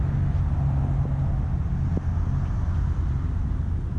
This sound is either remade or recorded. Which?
recorded